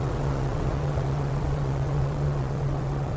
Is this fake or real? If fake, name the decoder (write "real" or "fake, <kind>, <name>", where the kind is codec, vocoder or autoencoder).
fake, vocoder, WaveNeXt